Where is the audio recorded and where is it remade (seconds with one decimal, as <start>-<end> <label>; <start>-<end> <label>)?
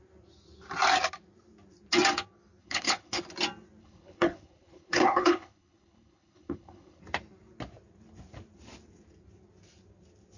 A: 0.0-2.6 recorded; 2.6-3.2 remade; 3.2-3.8 recorded; 3.8-7.0 remade; 7.0-10.4 recorded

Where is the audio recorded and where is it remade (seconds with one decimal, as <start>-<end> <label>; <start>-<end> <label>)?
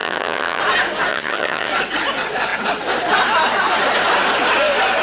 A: 0.0-0.6 remade; 0.6-1.1 recorded; 1.1-1.7 remade; 1.7-5.0 recorded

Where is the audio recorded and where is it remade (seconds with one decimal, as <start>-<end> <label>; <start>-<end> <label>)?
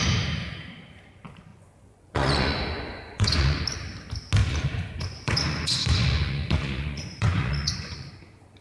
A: 0.0-1.5 recorded; 1.5-3.6 remade; 3.6-4.4 recorded; 4.4-8.1 remade; 8.1-8.6 recorded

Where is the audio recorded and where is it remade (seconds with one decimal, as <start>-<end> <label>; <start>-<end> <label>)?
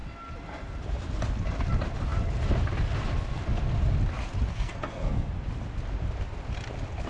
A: 0.0-4.5 recorded; 4.5-5.3 remade; 5.3-7.1 recorded